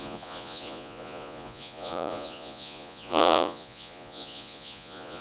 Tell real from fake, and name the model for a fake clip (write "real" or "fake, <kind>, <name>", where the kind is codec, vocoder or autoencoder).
fake, vocoder, Vocos